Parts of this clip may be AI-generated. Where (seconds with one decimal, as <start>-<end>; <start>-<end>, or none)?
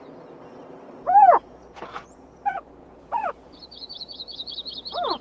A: 1.4-4.5